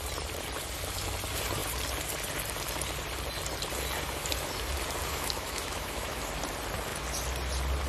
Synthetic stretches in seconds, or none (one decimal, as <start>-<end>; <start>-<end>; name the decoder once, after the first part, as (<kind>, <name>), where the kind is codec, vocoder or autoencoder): 5.1-6.2 (autoencoder, DAC-VAE)